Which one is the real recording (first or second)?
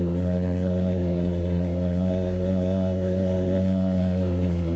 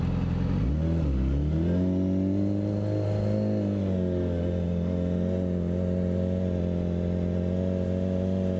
second